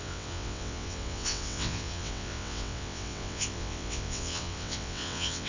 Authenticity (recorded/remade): remade